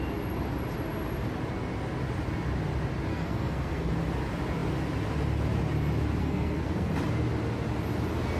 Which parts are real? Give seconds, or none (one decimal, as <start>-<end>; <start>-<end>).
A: 0.0-3.1; 3.9-6.2; 6.9-8.4